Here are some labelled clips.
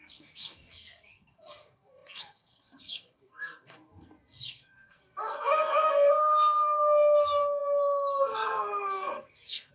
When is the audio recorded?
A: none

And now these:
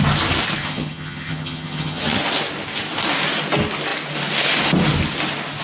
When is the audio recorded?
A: 0.0-0.6; 2.2-5.6

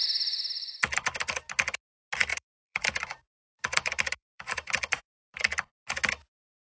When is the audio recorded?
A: 0.0-2.3; 5.8-6.6